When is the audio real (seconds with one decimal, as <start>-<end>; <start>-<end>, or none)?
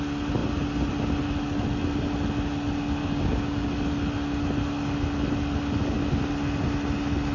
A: 0.0-3.0; 3.7-7.3